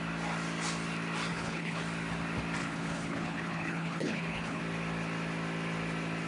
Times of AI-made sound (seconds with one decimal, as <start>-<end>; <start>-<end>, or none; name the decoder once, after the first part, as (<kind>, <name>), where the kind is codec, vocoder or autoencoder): 1.3-1.8 (codec, HILCodec); 2.6-4.6

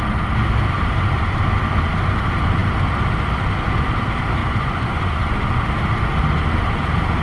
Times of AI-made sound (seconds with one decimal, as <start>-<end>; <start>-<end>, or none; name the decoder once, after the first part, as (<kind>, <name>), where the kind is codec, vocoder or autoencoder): 4.4-5.6 (vocoder, Vocos)

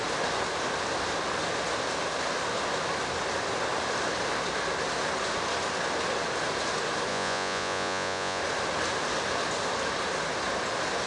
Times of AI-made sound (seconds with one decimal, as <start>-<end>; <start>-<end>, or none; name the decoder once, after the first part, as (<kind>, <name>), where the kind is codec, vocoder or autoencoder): 7.1-8.4 (vocoder, Vocos)